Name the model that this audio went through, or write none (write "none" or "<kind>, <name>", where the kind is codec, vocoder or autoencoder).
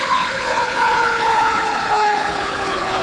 codec, HILCodec